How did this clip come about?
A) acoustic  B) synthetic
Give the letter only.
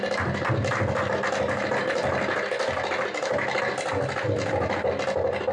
A